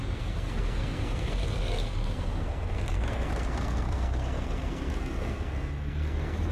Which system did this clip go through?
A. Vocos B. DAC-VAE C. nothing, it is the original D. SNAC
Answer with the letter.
D